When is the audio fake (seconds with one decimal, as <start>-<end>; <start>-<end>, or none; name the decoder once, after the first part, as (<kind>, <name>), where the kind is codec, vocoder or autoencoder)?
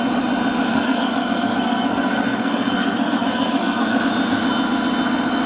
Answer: 0.7-4.0 (codec, SNAC)